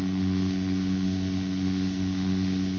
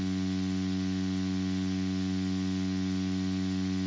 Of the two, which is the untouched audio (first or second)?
second